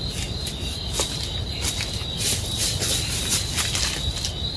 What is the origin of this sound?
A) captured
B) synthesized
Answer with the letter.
A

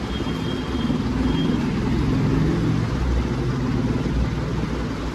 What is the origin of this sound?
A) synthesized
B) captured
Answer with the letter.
B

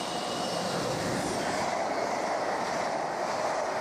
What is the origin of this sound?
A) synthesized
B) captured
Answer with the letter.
B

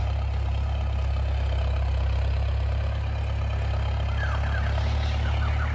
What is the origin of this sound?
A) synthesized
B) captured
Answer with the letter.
B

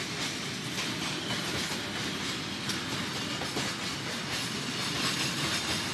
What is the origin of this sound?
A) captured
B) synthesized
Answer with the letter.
A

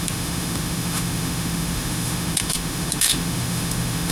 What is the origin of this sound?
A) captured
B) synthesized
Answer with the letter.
B